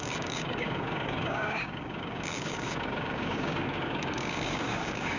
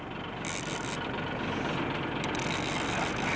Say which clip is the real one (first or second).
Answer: second